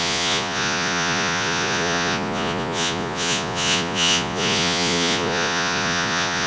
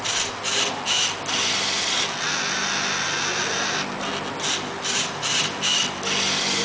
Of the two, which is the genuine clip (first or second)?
second